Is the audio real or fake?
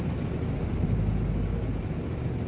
real